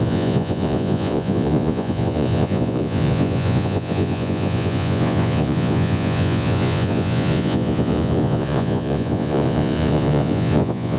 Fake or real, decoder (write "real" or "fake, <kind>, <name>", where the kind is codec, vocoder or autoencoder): fake, vocoder, Vocos